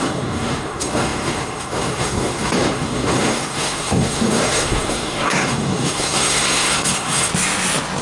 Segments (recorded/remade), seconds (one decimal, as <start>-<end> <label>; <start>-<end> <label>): 0.0-7.3 remade; 7.3-8.0 recorded